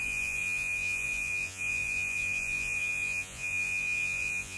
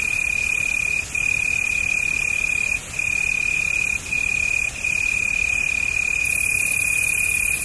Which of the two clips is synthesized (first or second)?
first